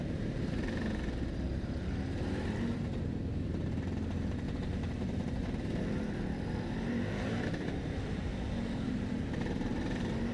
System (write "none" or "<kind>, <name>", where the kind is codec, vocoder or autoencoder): vocoder, BigVGAN v2